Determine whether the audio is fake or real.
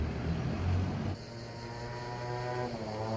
real